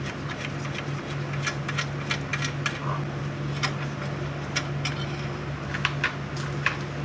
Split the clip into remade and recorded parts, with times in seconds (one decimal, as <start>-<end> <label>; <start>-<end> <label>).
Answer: 0.0-7.0 recorded